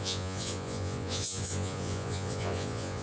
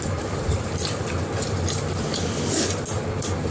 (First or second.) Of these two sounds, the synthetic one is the first